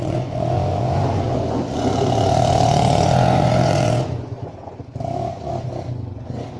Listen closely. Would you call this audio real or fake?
fake